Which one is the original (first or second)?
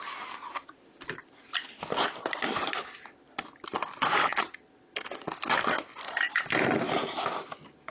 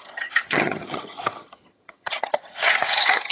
first